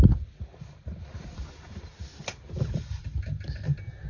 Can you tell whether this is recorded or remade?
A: recorded